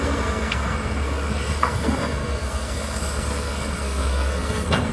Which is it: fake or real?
fake